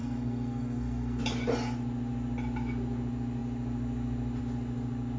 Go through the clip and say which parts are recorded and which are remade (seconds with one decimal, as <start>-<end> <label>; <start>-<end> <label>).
0.0-1.2 remade; 1.2-5.2 recorded